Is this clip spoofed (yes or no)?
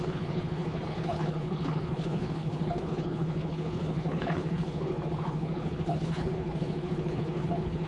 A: yes